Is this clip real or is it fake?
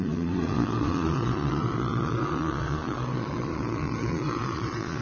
fake